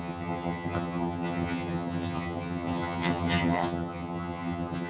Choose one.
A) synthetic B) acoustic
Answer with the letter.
A